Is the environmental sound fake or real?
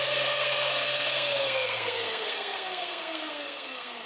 fake